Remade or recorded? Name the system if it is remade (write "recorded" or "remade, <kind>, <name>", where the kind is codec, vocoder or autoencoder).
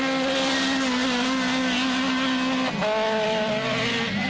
recorded